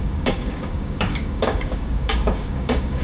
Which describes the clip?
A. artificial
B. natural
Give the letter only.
A